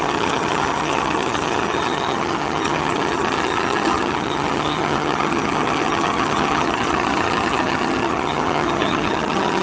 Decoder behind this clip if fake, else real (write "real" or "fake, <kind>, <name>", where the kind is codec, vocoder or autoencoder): fake, vocoder, HiFi-GAN